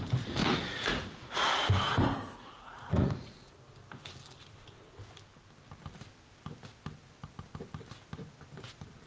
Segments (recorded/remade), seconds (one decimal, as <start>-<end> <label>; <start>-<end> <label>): 0.0-0.4 recorded; 0.4-1.5 remade; 1.5-2.4 recorded; 2.4-3.5 remade; 3.5-9.1 recorded